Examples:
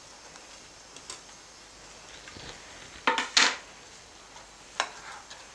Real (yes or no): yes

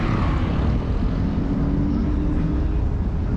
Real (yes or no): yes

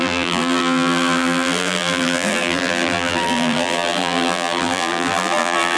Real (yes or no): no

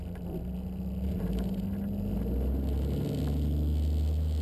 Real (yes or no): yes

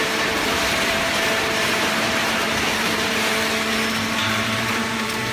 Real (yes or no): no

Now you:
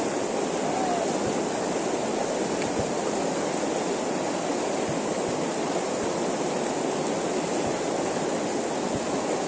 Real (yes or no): yes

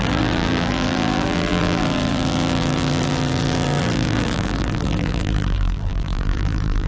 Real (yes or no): no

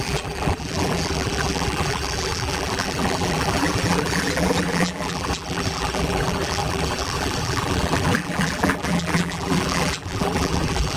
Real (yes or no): no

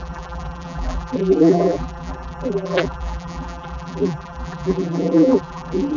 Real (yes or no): no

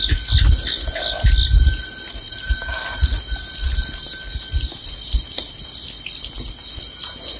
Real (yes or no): yes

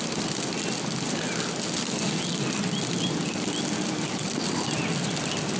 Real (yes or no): yes